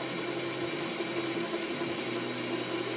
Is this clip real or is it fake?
real